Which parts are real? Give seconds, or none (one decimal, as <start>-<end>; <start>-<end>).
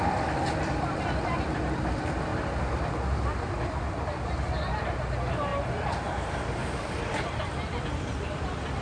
5.5-6.3